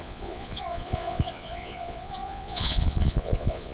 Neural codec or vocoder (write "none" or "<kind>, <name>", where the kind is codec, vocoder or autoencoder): vocoder, Vocos